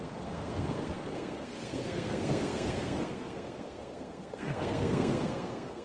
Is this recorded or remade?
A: remade